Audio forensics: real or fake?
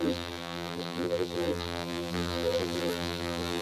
fake